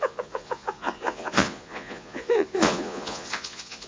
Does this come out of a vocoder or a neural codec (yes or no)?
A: yes